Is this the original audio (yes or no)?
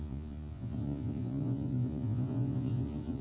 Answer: no